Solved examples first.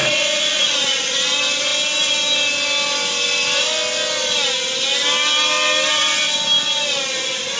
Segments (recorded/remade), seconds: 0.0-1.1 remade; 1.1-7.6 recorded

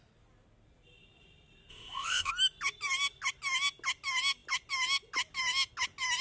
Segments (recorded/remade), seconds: 0.0-1.7 recorded; 1.7-2.3 remade; 2.3-6.2 recorded

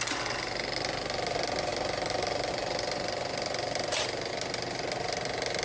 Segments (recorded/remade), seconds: 0.0-1.7 recorded; 1.7-4.3 remade; 4.3-5.6 recorded

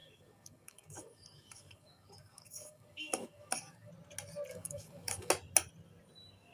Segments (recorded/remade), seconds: 0.0-3.9 remade; 3.9-4.5 recorded; 4.5-5.3 remade; 5.3-6.5 recorded

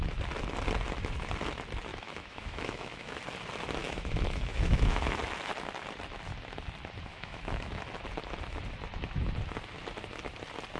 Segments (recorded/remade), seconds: 0.0-1.9 recorded; 1.9-3.2 remade; 3.2-3.8 recorded; 3.8-5.2 remade; 5.2-7.1 recorded; 7.1-7.8 remade; 7.8-10.8 recorded

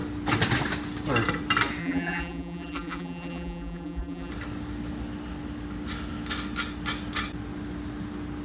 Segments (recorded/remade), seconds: 0.0-1.8 recorded; 1.8-4.3 remade; 4.3-8.4 recorded

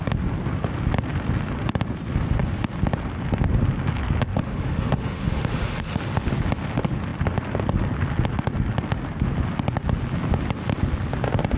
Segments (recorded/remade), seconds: 0.0-4.3 recorded; 4.3-6.0 remade; 6.0-11.6 recorded

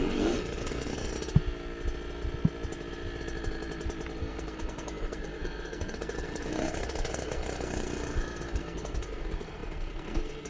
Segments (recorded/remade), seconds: 0.0-1.1 remade; 1.1-4.2 recorded; 4.2-10.5 remade